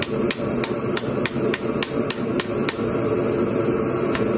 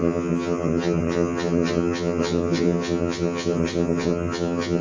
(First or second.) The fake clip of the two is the second